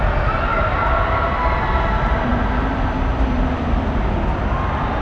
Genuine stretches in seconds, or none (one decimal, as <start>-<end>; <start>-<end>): 0.0-5.0